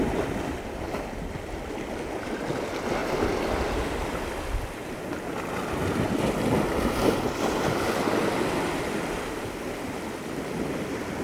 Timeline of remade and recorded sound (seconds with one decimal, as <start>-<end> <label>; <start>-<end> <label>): 0.0-11.2 recorded